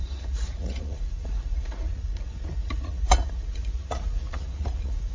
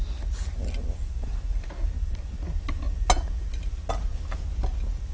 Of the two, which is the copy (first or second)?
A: first